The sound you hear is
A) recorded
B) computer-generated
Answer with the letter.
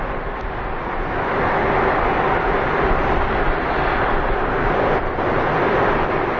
A